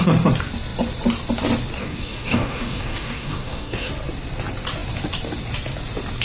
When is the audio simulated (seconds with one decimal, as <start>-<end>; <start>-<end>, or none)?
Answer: 1.8-3.9